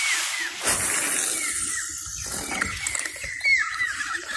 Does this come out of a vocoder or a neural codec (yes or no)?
no